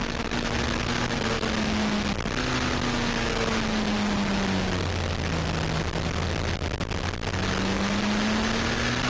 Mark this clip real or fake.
real